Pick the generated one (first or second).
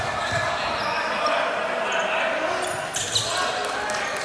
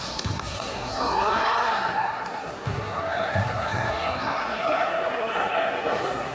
second